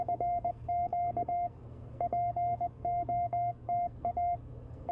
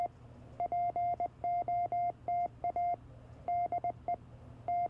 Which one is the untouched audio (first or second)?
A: second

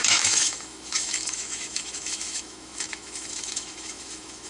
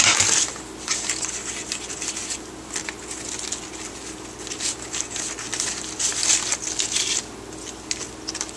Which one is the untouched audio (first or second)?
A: second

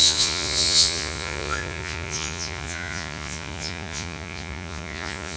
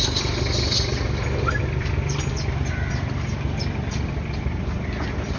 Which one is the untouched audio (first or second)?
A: second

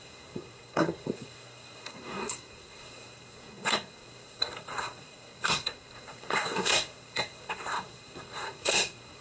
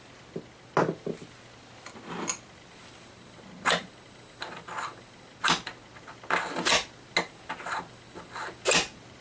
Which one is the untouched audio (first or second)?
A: second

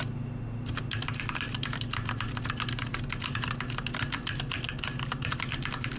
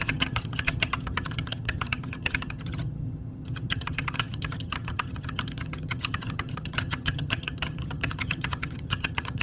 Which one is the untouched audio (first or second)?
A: first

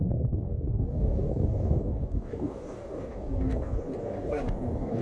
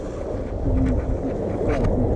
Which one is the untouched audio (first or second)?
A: second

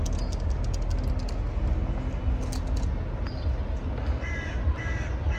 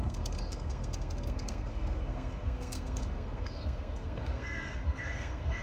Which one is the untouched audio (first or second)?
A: first